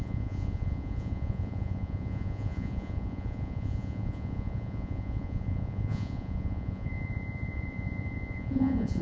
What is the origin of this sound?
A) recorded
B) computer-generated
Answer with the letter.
B